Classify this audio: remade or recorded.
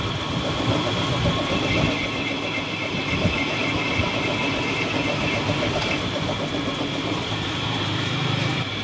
remade